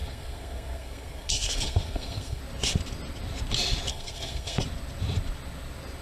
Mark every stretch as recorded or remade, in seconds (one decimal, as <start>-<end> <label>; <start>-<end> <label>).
0.0-2.4 remade; 2.4-3.9 recorded; 3.9-4.6 remade; 4.6-6.0 recorded